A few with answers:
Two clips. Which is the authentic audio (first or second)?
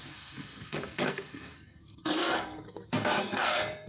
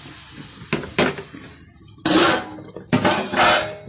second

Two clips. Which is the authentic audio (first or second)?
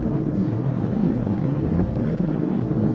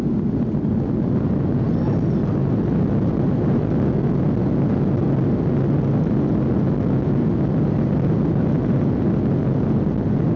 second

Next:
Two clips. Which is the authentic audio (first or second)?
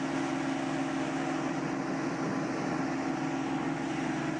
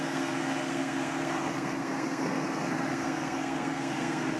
first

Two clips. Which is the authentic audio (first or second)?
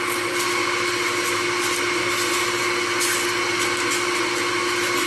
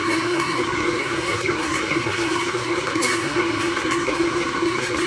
first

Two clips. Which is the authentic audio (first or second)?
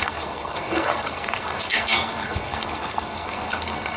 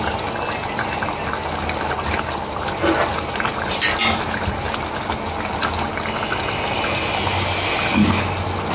second